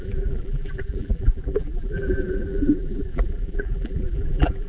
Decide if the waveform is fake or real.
fake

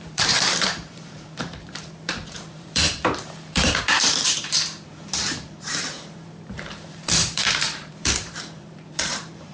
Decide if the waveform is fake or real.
fake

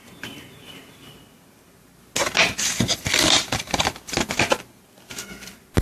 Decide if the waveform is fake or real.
real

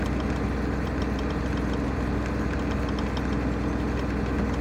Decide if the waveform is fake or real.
real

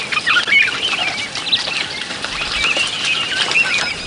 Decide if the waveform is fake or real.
real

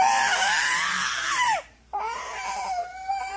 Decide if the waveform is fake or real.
fake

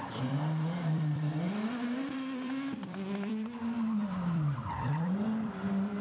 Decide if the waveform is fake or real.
fake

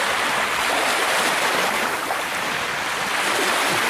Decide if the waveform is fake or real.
real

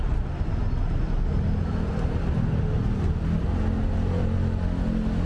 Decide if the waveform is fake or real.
real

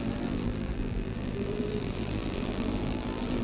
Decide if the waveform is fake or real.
fake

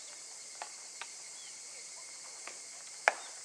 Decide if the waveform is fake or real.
real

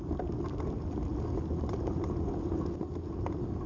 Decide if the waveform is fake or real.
real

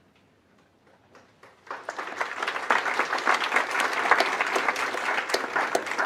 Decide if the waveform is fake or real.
real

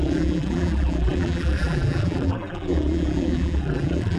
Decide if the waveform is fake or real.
fake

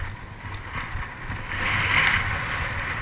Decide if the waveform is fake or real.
real